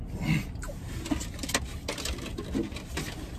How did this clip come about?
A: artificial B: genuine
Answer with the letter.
B